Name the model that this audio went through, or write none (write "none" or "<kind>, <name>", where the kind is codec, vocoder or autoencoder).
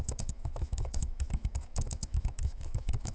autoencoder, DAC-VAE